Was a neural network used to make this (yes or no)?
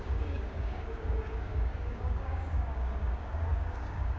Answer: yes